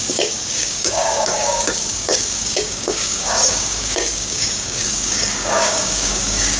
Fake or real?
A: fake